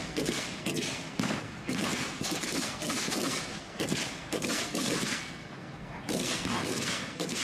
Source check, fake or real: fake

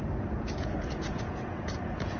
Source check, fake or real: fake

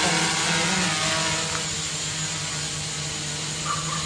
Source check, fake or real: real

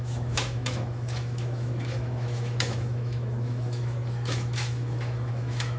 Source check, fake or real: fake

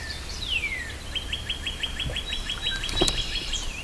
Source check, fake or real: fake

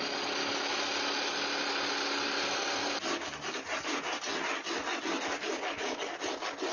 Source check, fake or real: real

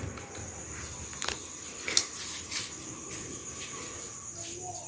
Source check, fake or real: real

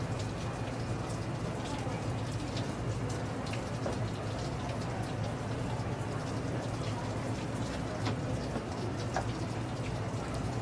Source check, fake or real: real